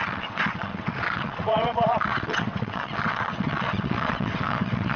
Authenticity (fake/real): fake